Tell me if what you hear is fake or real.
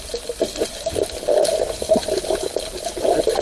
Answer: real